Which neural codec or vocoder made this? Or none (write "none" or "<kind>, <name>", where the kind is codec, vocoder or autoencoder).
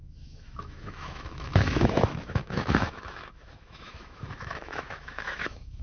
autoencoder, DAC-VAE